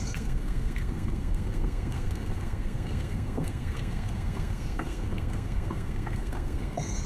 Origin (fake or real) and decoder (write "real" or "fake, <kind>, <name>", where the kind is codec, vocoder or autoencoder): fake, codec, SNAC